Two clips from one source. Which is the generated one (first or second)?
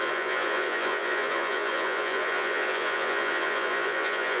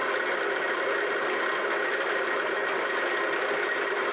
first